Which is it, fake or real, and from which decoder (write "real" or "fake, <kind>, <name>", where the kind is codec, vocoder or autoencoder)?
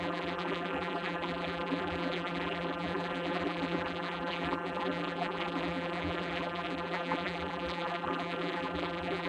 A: fake, vocoder, BigVGAN v2